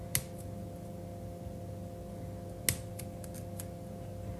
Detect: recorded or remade recorded